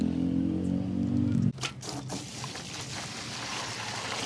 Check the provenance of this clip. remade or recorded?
recorded